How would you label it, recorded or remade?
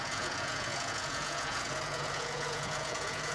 remade